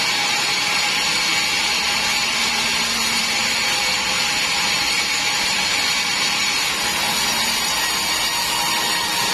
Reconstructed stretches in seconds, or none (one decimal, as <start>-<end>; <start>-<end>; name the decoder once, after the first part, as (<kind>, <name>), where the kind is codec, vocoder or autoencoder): none